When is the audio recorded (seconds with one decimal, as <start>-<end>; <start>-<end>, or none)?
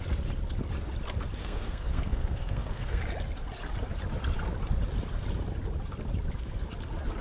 0.0-1.4; 3.0-7.2